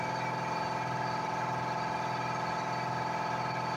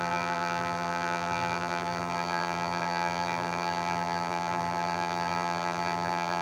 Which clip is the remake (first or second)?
second